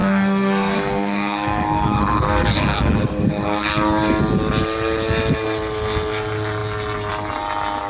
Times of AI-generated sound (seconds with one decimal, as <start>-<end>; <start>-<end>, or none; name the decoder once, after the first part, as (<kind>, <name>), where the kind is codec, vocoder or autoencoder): 0.0-3.7 (codec, SNAC)